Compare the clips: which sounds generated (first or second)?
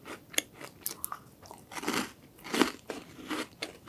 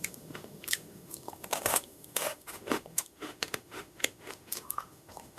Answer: second